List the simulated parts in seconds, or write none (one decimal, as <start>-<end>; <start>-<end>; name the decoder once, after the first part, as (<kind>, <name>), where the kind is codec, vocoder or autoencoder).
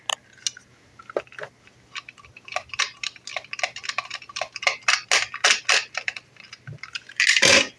none